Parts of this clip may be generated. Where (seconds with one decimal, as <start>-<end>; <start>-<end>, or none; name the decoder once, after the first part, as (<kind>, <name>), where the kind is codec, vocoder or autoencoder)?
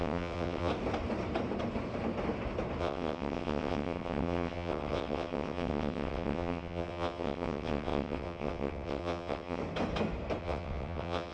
0.0-0.7 (vocoder, WaveNeXt); 2.8-9.6; 10.4-11.3